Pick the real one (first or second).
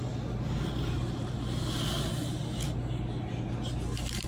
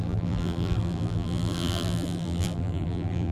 first